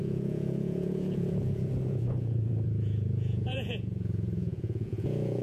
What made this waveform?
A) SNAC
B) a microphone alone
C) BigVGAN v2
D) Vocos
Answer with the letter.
D